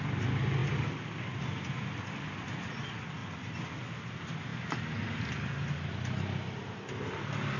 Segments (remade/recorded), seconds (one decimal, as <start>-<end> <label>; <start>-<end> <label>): 0.0-7.6 recorded